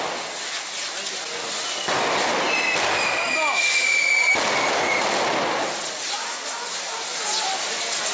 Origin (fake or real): real